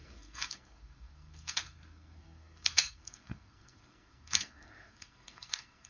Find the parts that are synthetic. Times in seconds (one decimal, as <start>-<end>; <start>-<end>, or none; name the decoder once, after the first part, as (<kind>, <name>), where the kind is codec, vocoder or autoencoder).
0.0-5.9 (codec, SNAC)